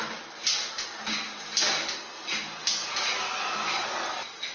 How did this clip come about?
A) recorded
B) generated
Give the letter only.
A